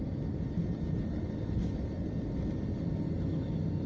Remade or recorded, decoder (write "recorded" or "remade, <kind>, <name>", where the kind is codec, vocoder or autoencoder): recorded